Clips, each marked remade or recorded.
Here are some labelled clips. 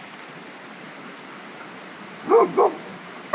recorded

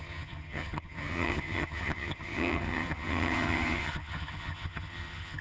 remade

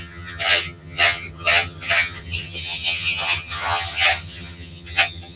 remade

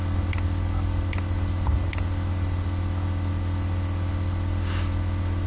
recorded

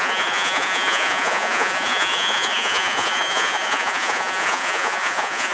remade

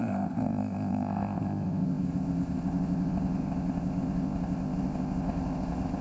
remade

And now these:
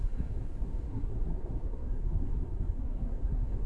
remade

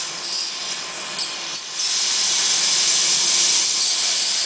recorded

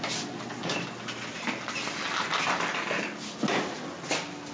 recorded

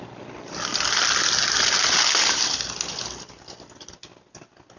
recorded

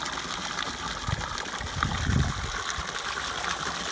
recorded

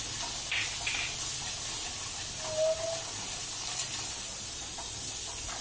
recorded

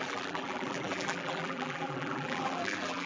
remade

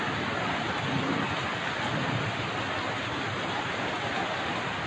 recorded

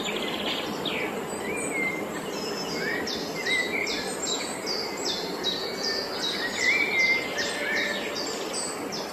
recorded